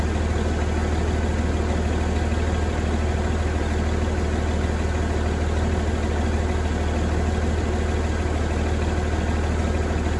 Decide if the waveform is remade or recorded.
recorded